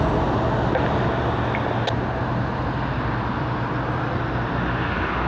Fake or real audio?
real